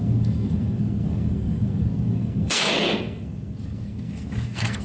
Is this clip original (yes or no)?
no